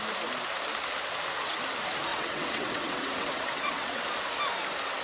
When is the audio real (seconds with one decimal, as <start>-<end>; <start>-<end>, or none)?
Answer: 0.0-2.1; 4.0-5.0